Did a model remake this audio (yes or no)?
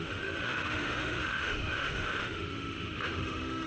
yes